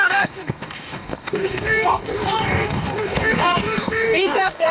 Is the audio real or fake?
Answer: fake